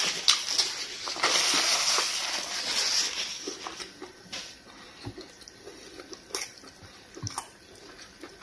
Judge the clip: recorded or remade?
recorded